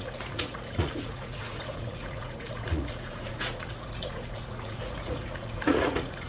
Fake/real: fake